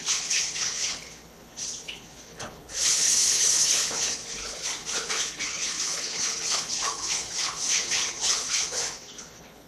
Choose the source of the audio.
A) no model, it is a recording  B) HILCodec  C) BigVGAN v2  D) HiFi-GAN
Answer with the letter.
B